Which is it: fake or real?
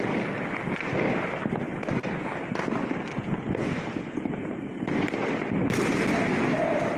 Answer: real